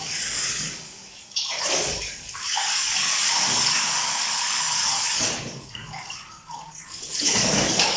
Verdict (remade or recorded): remade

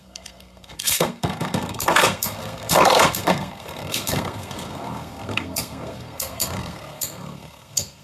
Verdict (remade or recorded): remade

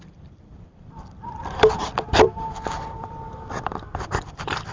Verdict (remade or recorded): remade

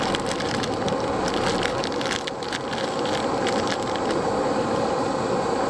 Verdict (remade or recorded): remade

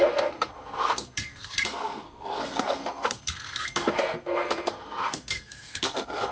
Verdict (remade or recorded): remade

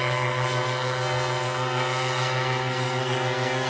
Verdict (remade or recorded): remade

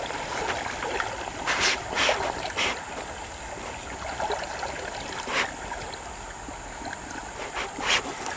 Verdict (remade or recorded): recorded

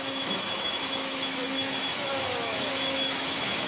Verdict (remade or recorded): remade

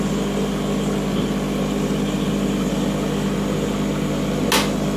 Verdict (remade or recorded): recorded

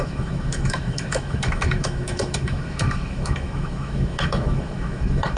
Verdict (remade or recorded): remade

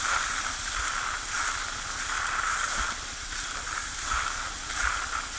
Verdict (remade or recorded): recorded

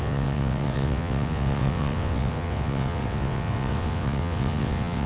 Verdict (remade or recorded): remade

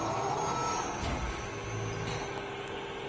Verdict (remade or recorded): recorded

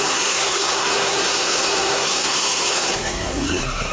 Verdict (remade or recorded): remade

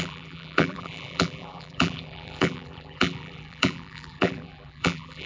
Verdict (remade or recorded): remade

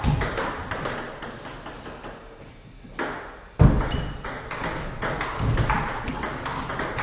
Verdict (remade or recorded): recorded